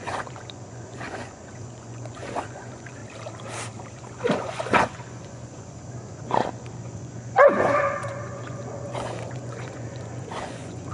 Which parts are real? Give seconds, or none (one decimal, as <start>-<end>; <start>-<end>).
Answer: 3.0-3.9